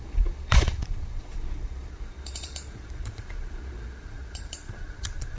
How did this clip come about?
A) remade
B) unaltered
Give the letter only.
A